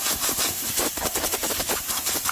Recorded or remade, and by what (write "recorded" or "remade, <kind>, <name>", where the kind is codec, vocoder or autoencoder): remade, vocoder, BigVGAN v2